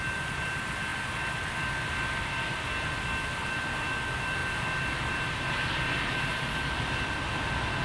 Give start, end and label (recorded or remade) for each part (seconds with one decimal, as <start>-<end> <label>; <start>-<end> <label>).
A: 0.0-7.8 recorded